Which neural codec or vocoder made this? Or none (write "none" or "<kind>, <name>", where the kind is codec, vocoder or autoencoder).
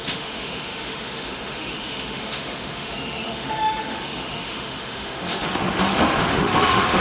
autoencoder, DAC-VAE